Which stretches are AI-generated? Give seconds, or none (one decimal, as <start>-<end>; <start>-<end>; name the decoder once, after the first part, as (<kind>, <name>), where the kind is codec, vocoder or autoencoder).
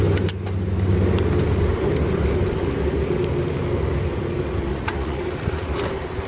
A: 4.7-5.8 (vocoder, Vocos)